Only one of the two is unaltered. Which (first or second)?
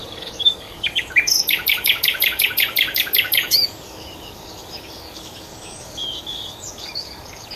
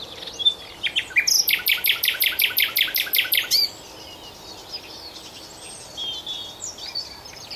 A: second